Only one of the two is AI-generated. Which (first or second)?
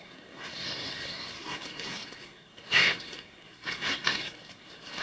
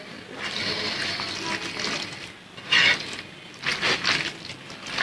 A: first